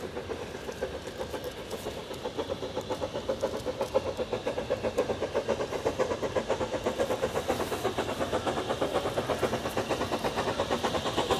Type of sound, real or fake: real